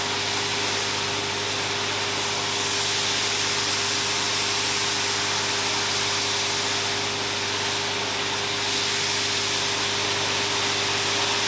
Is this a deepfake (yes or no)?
no